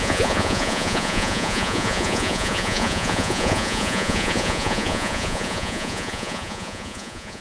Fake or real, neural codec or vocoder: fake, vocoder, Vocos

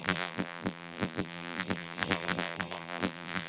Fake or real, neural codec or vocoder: fake, vocoder, BigVGAN v2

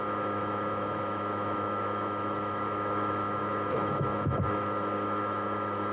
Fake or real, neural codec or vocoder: fake, autoencoder, DAC-VAE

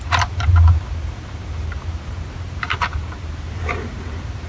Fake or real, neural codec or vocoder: fake, vocoder, BigVGAN v2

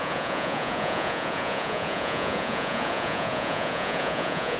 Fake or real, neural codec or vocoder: fake, vocoder, Vocos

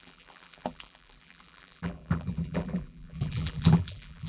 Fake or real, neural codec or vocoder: fake, vocoder, BigVGAN v2